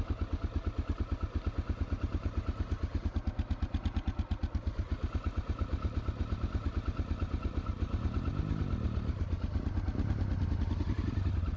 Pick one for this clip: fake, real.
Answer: real